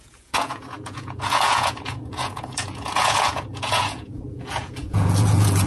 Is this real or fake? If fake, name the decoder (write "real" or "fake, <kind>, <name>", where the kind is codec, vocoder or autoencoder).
fake, vocoder, Vocos